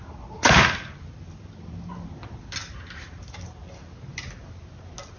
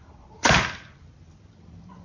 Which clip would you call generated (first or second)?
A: second